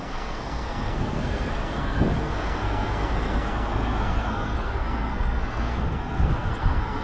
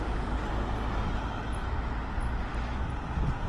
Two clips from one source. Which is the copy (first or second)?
first